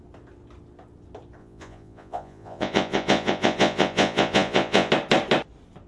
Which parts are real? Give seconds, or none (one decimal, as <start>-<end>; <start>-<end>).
0.0-1.4; 4.9-5.9